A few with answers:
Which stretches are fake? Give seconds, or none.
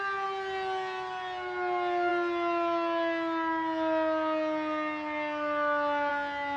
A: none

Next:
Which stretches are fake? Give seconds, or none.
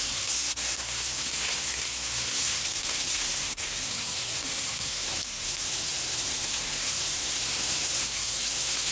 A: 0.0-8.9 (codec, SNAC)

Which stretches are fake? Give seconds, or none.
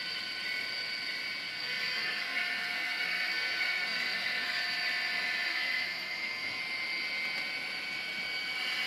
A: 1.5-4.6 (codec, SNAC); 5.5-6.6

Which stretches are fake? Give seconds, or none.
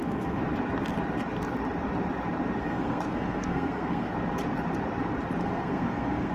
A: 0.0-0.4 (codec, SNAC); 2.6-4.1; 5.4-6.3